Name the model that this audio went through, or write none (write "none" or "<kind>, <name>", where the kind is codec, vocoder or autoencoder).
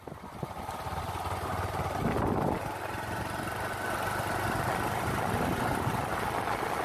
none